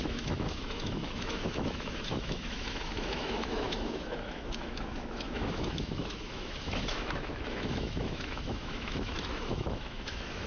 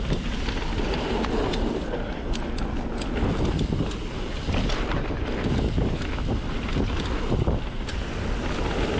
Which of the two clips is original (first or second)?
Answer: second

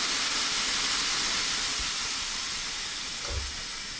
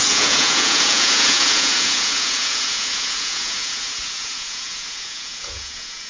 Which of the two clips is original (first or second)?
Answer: first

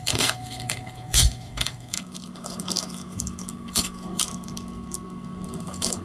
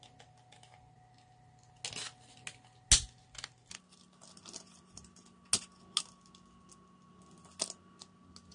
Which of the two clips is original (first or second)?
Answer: second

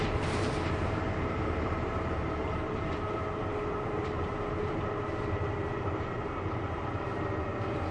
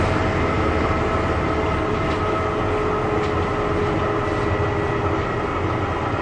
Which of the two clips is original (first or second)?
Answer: second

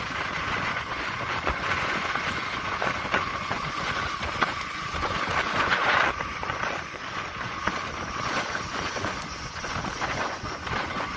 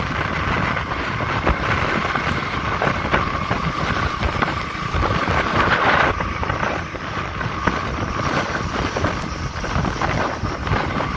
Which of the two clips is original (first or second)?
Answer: second